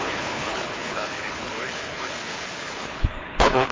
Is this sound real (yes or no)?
no